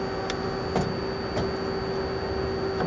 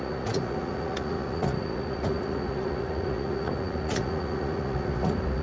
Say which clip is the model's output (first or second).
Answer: second